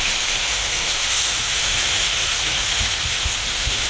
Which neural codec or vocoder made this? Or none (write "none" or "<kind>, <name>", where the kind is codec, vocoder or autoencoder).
autoencoder, DAC-VAE